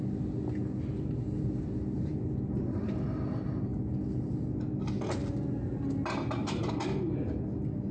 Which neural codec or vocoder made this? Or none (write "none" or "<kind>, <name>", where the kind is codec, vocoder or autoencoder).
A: none